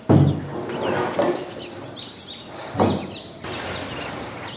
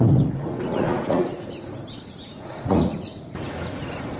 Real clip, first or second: first